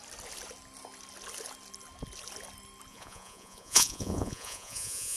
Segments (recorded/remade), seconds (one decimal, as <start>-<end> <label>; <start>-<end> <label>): 0.0-2.9 recorded; 2.9-5.2 remade